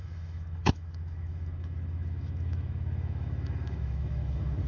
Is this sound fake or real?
fake